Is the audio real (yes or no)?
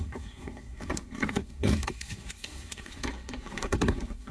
no